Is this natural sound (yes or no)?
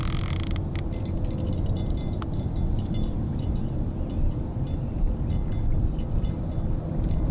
yes